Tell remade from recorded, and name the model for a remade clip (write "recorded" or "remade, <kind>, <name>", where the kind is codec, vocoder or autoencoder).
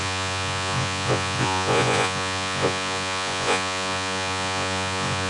remade, vocoder, Vocos